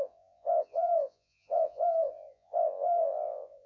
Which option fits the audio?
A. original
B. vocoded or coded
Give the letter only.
B